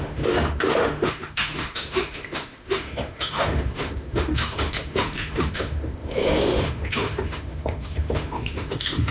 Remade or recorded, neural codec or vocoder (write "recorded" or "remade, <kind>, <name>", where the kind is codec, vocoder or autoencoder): remade, autoencoder, DAC-VAE